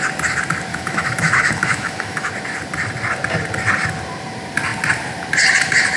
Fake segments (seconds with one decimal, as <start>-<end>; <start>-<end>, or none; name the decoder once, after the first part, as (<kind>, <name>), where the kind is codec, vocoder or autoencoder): 0.7-2.3 (autoencoder, DAC-VAE)